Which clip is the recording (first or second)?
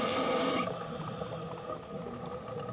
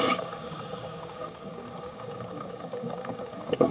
first